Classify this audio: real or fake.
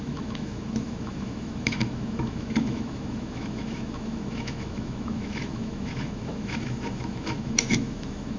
fake